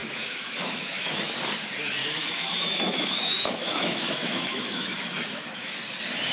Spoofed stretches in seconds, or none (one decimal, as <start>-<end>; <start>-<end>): 0.0-1.3; 2.0-5.8